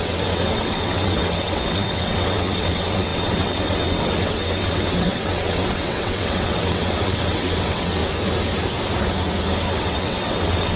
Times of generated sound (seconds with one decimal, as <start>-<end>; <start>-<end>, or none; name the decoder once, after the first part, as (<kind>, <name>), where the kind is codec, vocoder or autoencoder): 0.0-8.0 (vocoder, WaveNeXt); 9.7-10.8